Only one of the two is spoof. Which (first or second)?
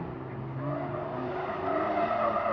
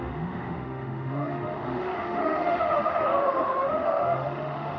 second